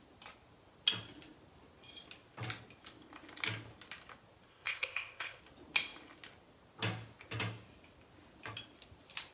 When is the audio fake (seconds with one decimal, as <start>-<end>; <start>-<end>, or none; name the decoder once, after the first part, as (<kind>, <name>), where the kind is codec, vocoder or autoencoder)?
4.5-5.4 (codec, ZipCodec)